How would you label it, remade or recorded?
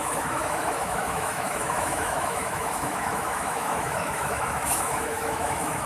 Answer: remade